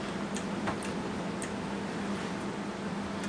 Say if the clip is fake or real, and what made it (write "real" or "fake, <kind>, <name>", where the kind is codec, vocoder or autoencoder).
real